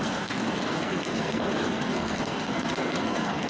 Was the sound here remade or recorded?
remade